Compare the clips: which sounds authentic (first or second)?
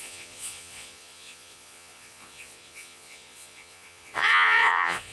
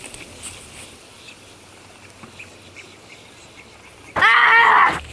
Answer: second